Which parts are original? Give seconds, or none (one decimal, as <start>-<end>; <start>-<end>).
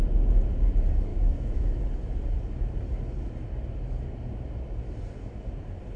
0.0-1.1; 1.8-6.0